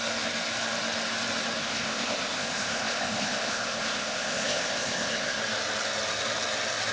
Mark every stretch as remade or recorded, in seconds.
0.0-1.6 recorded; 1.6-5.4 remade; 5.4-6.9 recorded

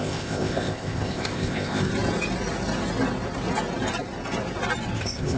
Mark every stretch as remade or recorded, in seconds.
0.0-1.9 remade; 1.9-5.0 recorded; 5.0-5.4 remade